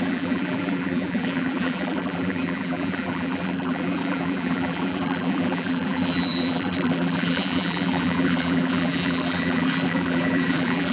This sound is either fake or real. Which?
fake